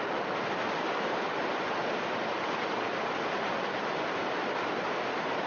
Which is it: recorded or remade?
remade